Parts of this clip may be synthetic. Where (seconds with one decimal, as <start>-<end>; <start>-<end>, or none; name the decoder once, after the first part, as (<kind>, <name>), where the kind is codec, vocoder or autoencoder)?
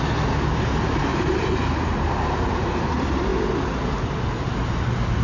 1.1-2.8 (vocoder, BigVGAN v2)